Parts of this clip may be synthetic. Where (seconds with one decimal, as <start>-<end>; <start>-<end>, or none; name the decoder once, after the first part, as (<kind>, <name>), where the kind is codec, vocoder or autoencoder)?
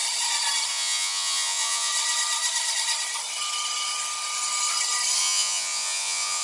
0.7-1.9 (vocoder, Vocos); 5.2-6.4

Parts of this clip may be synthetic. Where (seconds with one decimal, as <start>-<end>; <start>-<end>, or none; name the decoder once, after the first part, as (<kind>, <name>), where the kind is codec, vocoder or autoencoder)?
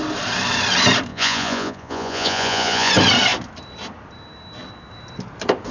1.1-2.9 (vocoder, Vocos)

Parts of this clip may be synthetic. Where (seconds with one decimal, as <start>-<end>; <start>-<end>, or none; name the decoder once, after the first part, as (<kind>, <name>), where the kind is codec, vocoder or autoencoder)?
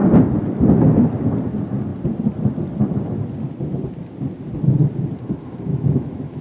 5.7-6.4 (autoencoder, DAC-VAE)